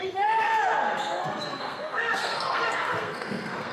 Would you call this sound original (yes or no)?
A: no